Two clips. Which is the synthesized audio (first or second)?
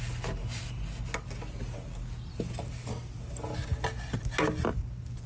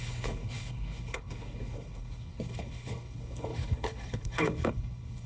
second